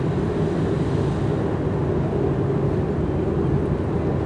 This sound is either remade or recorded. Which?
recorded